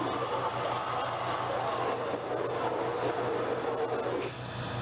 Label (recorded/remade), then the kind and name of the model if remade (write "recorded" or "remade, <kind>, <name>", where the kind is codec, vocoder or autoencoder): recorded